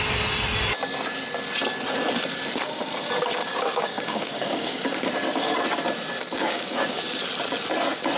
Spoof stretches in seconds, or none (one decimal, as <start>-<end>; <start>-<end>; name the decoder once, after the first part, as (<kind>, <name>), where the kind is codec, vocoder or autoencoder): 3.4-5.0 (codec, DAC); 6.4-7.0